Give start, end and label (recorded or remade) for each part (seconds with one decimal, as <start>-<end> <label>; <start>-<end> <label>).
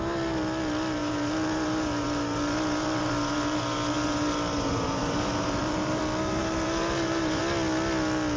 0.0-1.0 recorded; 1.0-6.0 remade; 6.0-6.4 recorded; 6.4-7.4 remade; 7.4-8.4 recorded